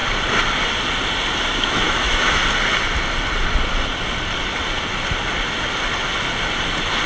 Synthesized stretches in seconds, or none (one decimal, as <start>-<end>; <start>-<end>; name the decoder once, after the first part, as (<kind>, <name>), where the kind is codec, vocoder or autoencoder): 1.4-2.4 (autoencoder, DAC-VAE)